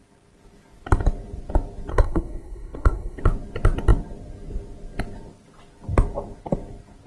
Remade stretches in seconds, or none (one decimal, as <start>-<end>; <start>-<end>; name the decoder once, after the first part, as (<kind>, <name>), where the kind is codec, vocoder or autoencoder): 1.9-3.2 (codec, SNAC)